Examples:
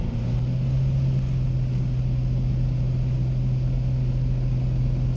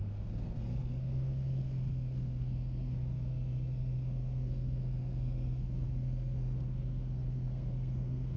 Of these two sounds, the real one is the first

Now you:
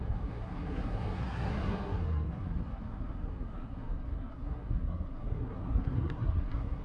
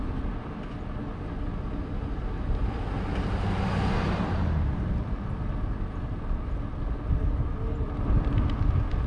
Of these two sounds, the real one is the second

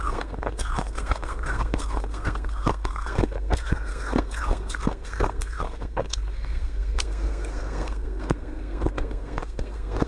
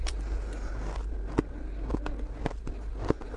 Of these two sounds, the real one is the second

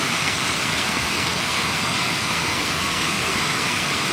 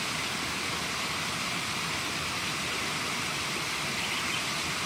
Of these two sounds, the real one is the second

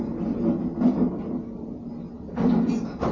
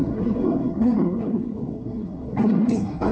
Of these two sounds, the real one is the first